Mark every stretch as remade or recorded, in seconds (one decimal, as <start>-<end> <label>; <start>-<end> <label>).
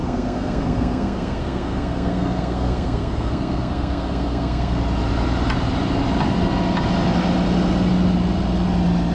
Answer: 0.0-4.8 remade; 4.8-9.1 recorded